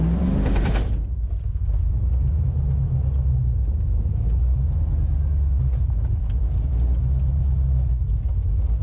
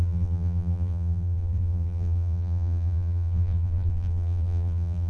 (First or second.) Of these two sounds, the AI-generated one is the second